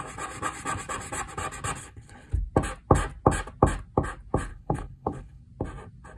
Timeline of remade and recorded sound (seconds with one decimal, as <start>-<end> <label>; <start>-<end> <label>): 0.0-1.8 recorded; 1.8-2.3 remade; 2.3-4.5 recorded; 4.5-5.4 remade; 5.4-6.2 recorded